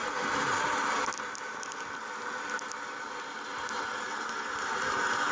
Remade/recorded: recorded